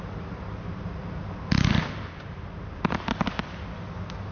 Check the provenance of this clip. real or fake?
real